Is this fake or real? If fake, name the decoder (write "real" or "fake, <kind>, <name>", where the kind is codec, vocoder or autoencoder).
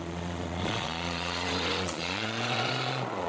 fake, vocoder, Vocos